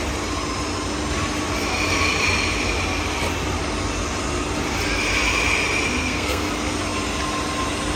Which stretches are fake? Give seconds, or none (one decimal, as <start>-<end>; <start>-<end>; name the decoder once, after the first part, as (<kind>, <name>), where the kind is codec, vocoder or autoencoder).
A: 6.0-6.5 (codec, SNAC)